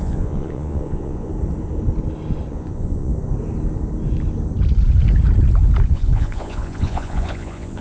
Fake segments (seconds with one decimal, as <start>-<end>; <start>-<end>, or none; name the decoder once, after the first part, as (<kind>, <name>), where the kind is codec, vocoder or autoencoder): 0.0-1.3 (vocoder, Vocos); 2.5-3.1; 5.9-7.8